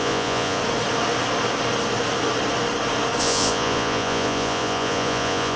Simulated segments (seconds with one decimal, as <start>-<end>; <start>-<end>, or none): 0.0-0.6; 3.2-5.6